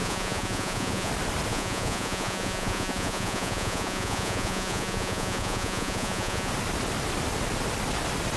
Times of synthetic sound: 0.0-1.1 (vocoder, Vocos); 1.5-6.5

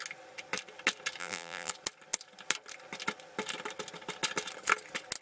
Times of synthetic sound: 1.2-1.7 (vocoder, BigVGAN v2)

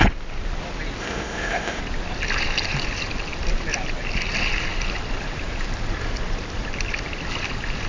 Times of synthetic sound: 1.0-1.8 (codec, ZipCodec)

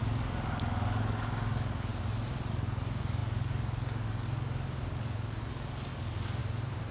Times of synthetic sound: 0.0-1.9 (codec, DAC); 2.5-6.4

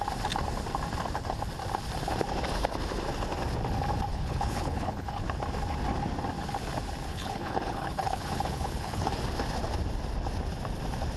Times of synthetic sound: 4.1-5.2 (codec, HILCodec); 7.1-9.1